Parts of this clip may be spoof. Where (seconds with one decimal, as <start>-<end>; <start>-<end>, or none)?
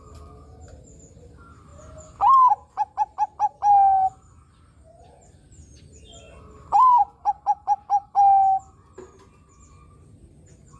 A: none